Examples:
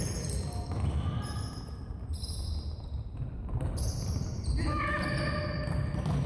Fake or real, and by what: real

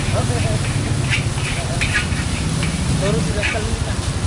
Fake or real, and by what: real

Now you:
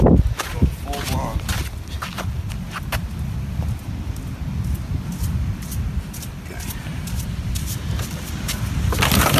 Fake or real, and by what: real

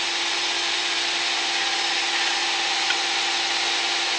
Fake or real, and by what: real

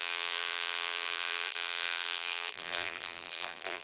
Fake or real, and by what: fake, vocoder, BigVGAN v2